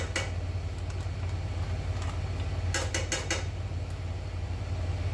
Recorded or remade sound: recorded